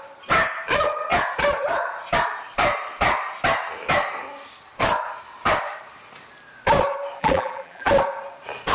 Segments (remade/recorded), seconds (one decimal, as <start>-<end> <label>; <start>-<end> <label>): 0.0-7.2 recorded; 7.2-7.9 remade; 7.9-8.7 recorded